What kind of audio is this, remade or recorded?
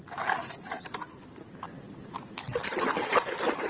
recorded